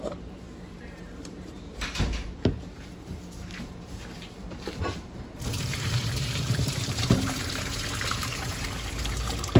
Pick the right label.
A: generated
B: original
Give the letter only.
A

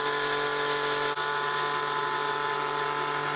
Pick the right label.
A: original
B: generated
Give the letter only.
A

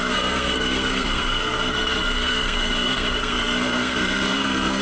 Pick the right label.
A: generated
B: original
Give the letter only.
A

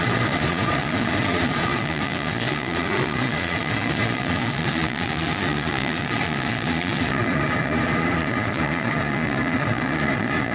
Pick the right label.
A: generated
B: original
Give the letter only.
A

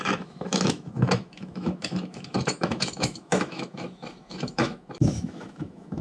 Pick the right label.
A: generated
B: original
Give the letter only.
A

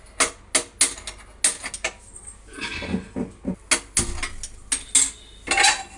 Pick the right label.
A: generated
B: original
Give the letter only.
B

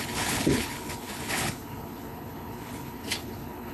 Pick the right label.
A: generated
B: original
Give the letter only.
A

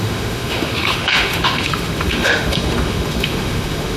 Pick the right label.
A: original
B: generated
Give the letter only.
B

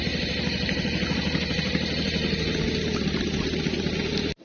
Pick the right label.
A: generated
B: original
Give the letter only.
B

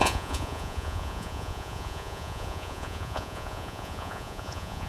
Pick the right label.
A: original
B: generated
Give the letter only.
B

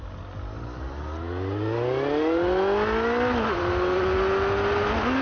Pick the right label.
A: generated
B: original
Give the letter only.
B